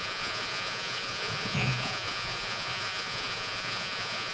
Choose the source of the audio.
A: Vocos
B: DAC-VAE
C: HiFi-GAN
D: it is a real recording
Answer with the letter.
A